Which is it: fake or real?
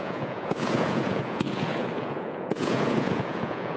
fake